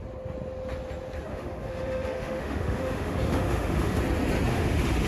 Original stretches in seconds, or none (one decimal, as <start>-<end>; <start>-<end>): 0.0-1.3; 4.0-4.5